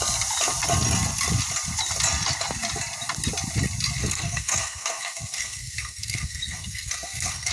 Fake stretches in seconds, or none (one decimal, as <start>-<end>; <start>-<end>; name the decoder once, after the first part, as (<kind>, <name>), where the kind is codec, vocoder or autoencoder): 4.0-7.5 (codec, SNAC)